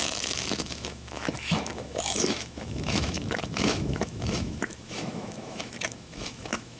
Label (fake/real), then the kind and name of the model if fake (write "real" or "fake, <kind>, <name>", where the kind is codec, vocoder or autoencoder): fake, autoencoder, DAC-VAE